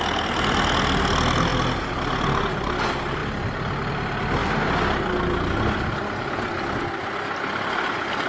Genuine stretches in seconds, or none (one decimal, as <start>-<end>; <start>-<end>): 0.0-8.3

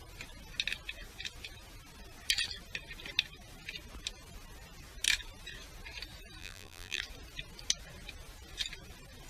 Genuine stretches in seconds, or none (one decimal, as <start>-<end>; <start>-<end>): 0.0-6.4; 7.0-9.3